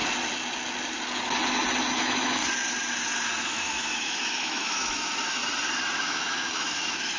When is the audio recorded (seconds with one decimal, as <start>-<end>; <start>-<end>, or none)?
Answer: 0.0-2.0; 2.4-3.4; 5.4-6.0